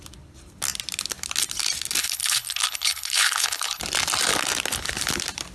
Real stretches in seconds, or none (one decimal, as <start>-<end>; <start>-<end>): 0.0-2.0; 3.8-5.5